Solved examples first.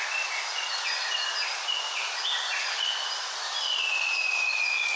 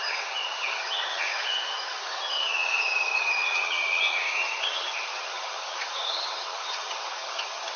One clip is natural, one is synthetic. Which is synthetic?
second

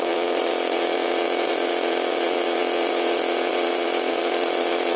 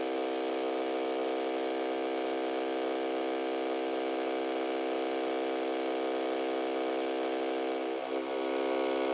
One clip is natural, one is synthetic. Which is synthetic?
first